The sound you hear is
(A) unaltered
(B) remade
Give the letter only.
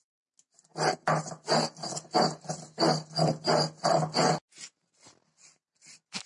A